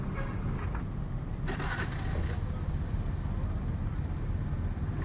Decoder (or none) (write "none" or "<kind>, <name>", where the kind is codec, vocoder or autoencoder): none